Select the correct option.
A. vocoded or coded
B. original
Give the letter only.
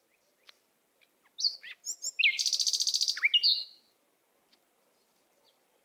B